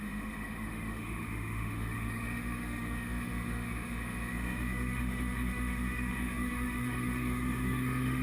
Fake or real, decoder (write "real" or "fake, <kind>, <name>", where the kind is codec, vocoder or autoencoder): fake, autoencoder, DAC-VAE